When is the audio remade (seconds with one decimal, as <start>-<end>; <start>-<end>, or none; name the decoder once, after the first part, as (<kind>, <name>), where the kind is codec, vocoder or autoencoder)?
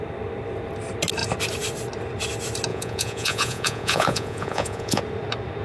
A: 2.7-5.0 (vocoder, Vocos)